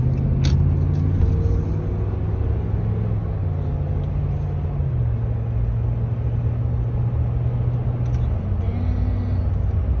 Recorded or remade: recorded